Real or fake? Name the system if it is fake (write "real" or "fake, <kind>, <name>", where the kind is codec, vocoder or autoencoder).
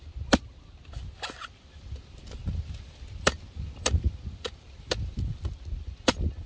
real